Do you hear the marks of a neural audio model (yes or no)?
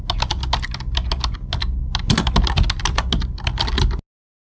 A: no